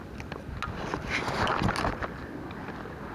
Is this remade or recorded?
recorded